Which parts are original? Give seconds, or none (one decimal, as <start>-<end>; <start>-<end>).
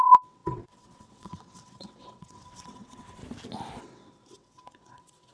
3.2-3.8